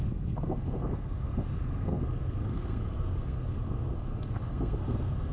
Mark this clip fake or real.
fake